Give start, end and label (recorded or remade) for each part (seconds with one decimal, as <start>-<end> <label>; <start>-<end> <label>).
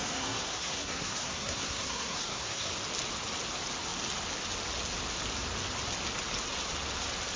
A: 0.0-2.7 remade; 2.7-7.4 recorded